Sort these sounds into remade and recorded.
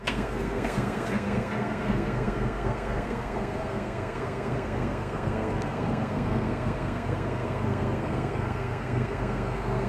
remade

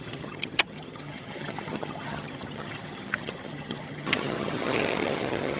remade